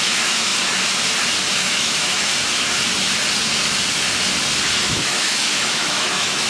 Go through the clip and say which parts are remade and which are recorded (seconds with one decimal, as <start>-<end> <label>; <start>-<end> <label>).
0.0-0.5 remade; 0.5-1.5 recorded; 1.5-2.3 remade; 2.3-4.8 recorded; 4.8-6.5 remade